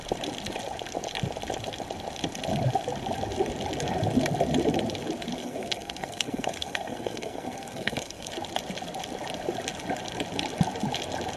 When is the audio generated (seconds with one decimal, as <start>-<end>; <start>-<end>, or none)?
5.4-8.3